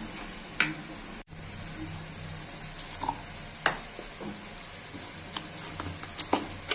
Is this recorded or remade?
recorded